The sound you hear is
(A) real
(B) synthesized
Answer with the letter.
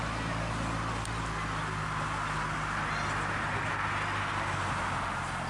A